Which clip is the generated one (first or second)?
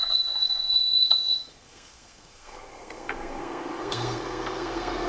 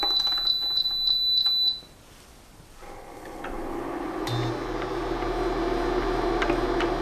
first